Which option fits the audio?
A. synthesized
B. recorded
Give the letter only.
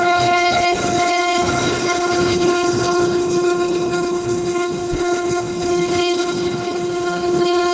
A